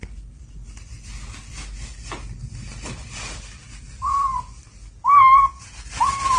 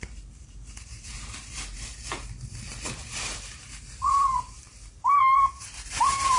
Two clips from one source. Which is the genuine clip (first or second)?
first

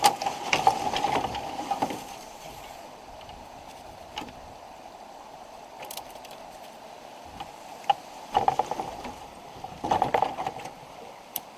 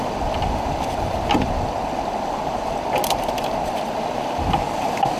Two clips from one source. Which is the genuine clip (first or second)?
second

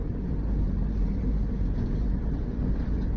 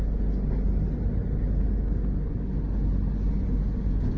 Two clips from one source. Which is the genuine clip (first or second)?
second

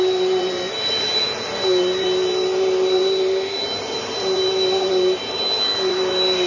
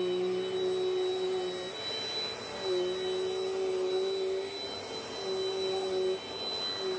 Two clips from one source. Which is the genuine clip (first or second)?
second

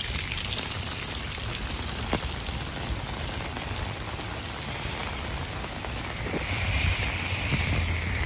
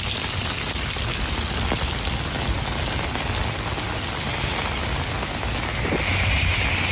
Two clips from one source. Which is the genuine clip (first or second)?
second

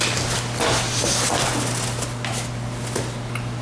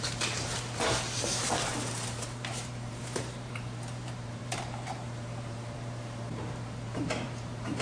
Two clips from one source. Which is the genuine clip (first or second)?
first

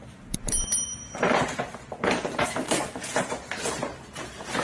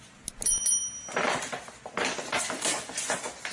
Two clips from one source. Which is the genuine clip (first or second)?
second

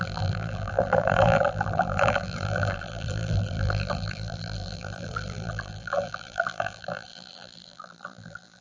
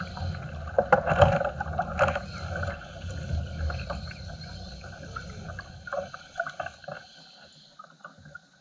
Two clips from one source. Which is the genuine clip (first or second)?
second